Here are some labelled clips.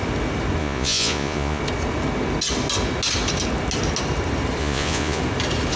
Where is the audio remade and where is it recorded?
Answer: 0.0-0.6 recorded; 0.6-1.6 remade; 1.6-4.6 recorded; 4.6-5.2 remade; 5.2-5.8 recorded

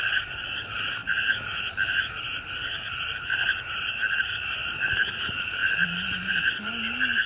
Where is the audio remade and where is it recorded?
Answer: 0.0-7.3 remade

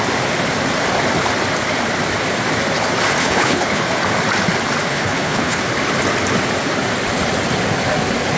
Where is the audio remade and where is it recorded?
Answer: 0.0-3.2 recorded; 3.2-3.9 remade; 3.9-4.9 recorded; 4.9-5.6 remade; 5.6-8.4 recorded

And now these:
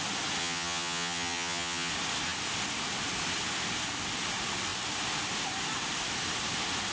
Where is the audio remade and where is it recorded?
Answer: 0.0-0.4 recorded; 0.4-1.9 remade; 1.9-6.9 recorded